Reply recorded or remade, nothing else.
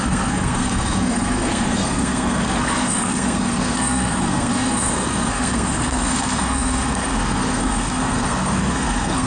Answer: remade